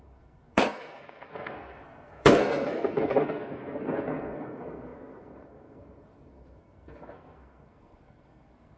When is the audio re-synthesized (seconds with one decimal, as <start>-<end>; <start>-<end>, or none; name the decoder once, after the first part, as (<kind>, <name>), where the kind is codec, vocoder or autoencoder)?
0.0-8.8 (codec, SNAC)